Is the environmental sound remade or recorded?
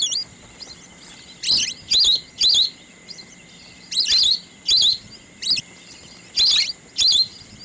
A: recorded